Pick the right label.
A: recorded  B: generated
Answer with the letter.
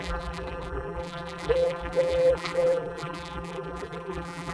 B